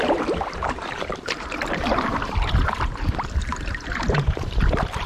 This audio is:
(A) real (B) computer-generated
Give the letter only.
B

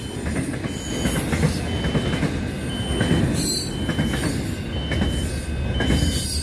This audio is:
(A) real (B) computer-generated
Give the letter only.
A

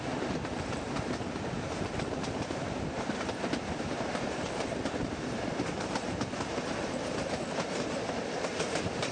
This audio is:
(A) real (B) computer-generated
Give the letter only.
B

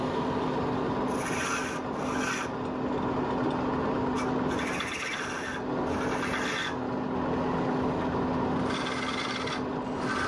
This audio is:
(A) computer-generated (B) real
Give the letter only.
B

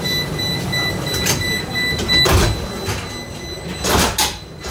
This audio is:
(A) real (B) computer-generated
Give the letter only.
A